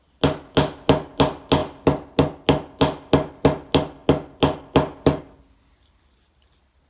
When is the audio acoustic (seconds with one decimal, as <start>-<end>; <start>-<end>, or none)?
0.0-6.9